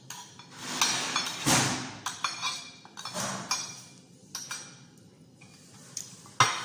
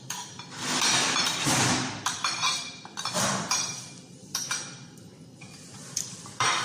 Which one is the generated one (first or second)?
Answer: second